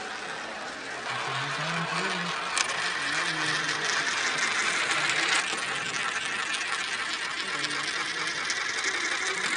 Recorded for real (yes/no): yes